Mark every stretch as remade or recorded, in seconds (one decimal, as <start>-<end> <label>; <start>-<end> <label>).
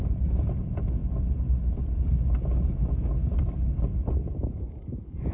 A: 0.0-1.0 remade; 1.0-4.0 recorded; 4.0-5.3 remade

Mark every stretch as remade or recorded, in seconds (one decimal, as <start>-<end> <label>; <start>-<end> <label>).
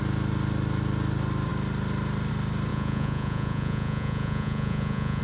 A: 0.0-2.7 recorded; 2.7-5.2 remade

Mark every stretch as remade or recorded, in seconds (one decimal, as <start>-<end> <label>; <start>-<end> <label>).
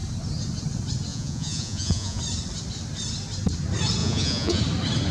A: 0.0-1.1 recorded; 1.1-2.2 remade; 2.2-4.0 recorded; 4.0-4.6 remade; 4.6-5.1 recorded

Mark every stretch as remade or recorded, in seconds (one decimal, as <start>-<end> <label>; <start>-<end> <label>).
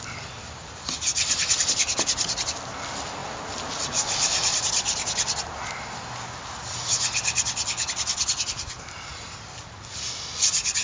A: 0.0-10.8 recorded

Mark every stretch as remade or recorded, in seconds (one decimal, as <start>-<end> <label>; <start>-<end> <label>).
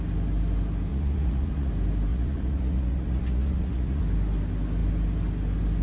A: 0.0-0.9 recorded; 0.9-1.7 remade; 1.7-2.1 recorded; 2.1-4.0 remade; 4.0-5.8 recorded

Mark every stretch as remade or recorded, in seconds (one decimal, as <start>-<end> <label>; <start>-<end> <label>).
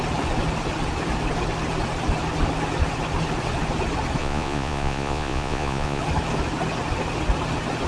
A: 0.0-4.2 recorded; 4.2-6.0 remade; 6.0-7.9 recorded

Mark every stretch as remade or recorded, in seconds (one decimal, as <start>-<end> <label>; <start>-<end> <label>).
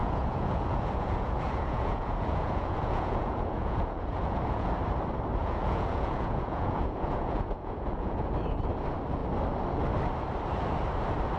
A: 0.0-4.7 remade; 4.7-5.4 recorded; 5.4-8.3 remade; 8.3-11.4 recorded